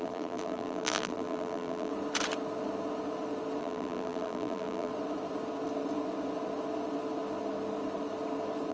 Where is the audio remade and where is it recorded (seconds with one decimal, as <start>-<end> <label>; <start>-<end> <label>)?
0.0-1.9 remade; 1.9-3.6 recorded; 3.6-4.9 remade; 4.9-8.7 recorded

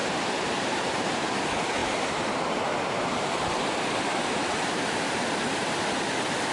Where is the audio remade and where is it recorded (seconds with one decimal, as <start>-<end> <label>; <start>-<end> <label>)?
0.0-1.4 remade; 1.4-1.8 recorded; 1.8-5.7 remade; 5.7-6.5 recorded